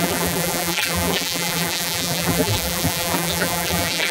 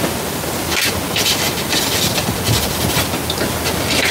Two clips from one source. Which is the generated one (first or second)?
first